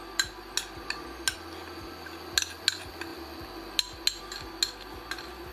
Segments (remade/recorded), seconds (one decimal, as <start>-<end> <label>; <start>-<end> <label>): 0.0-5.5 recorded